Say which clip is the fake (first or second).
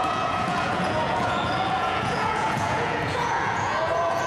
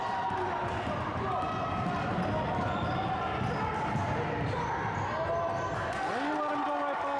first